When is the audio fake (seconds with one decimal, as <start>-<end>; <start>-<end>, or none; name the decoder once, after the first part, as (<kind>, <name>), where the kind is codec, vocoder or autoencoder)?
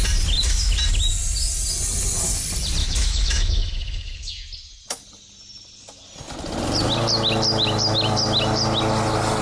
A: 2.8-4.3 (autoencoder, DAC-VAE)